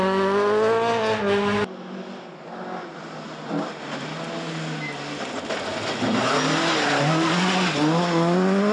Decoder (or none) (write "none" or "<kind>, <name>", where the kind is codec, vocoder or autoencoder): none